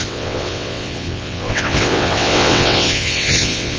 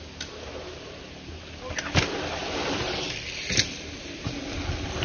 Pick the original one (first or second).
second